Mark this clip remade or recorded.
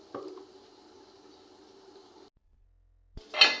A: recorded